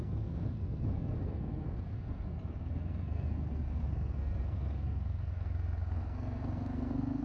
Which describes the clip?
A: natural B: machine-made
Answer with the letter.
B